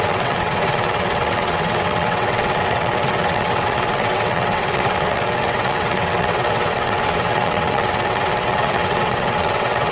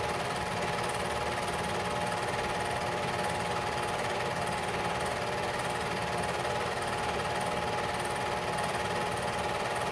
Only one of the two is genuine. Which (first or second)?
second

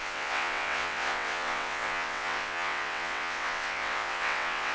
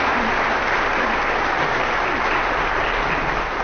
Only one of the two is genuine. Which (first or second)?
second